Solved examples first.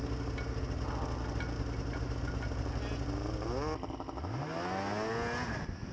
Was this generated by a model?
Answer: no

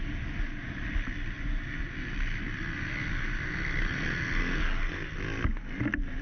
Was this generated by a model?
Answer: no